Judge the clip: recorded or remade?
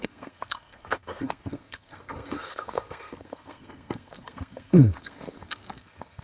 remade